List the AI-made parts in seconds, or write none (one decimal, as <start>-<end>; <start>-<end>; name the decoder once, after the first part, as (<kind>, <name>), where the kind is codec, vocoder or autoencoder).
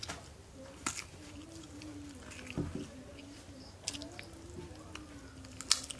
none